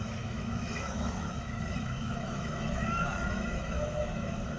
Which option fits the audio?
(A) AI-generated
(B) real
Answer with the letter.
A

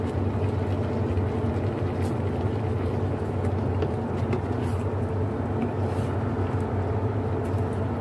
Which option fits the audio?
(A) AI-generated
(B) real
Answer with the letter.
B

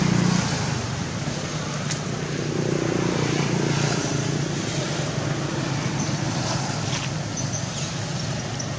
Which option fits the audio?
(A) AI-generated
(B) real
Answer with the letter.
B